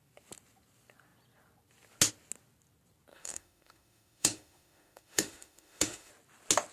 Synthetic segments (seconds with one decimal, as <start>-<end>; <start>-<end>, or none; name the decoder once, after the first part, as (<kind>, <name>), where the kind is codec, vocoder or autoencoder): 3.1-6.1 (autoencoder, DAC-VAE)